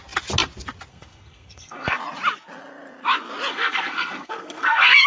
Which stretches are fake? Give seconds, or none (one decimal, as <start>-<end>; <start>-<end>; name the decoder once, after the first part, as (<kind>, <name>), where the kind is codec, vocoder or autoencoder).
0.9-2.0 (codec, SNAC); 3.5-5.1